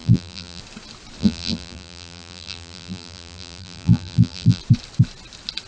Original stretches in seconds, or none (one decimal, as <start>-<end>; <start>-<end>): 0.6-1.2; 4.6-5.7